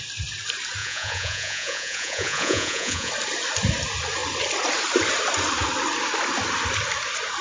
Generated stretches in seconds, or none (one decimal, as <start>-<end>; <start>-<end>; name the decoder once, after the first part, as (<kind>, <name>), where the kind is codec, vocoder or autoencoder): 0.8-3.1 (vocoder, Vocos)